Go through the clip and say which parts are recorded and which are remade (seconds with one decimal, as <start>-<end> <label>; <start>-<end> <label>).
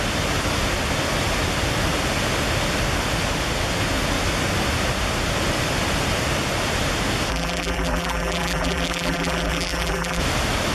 0.0-7.3 recorded; 7.3-10.2 remade; 10.2-10.7 recorded